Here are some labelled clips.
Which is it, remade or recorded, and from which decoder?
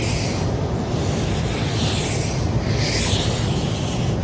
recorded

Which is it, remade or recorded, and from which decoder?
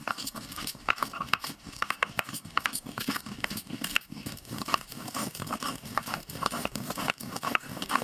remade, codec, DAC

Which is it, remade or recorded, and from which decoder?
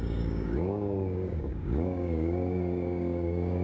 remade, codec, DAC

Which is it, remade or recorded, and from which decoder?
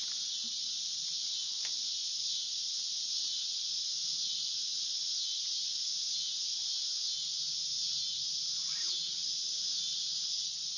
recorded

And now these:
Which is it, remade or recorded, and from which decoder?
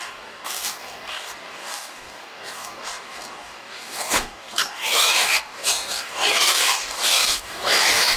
remade, codec, DAC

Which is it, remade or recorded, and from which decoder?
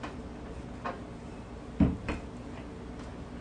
recorded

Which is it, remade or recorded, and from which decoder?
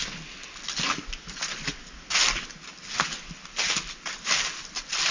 recorded